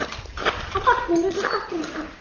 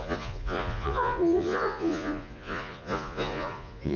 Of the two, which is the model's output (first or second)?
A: second